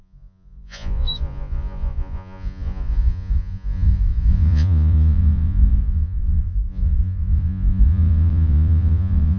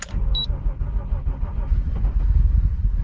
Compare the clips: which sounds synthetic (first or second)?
first